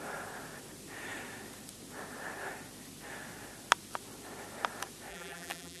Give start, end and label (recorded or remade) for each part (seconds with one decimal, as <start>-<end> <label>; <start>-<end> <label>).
0.0-5.1 recorded; 5.1-5.8 remade